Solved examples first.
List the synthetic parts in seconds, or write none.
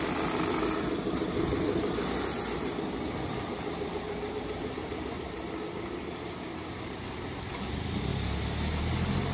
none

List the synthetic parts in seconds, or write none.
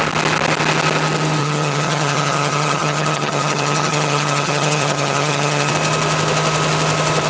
1.4-5.7 (vocoder, HiFi-GAN)